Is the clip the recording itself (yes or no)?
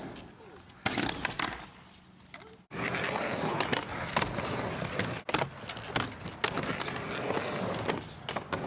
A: yes